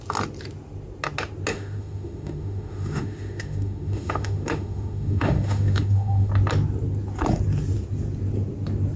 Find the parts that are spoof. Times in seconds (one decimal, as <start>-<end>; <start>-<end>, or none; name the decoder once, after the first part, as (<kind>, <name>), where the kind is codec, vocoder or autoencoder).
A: 1.5-6.3 (autoencoder, DAC-VAE)